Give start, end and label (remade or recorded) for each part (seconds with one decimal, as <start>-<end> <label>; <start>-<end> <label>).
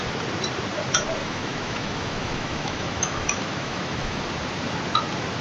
0.0-1.2 recorded; 1.2-4.2 remade; 4.2-5.4 recorded